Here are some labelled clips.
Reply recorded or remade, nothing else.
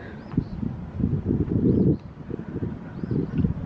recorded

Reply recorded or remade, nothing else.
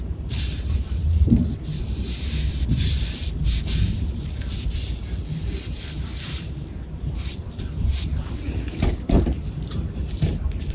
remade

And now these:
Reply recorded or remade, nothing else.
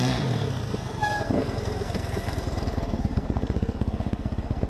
remade